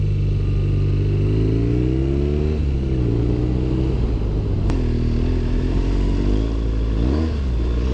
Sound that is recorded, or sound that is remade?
recorded